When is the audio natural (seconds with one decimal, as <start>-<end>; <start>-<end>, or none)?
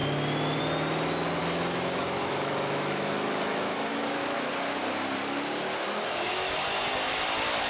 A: 0.0-1.4; 4.5-5.8; 6.3-7.7